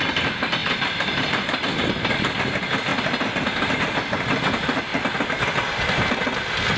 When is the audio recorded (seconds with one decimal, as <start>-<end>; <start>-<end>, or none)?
0.0-0.6; 2.1-6.8